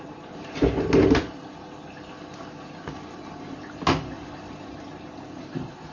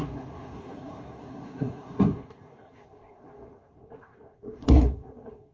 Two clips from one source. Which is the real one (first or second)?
first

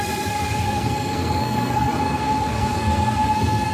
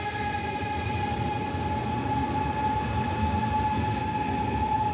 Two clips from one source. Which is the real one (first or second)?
second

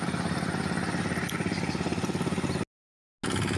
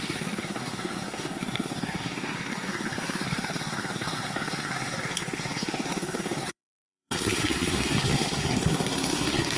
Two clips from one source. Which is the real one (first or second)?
first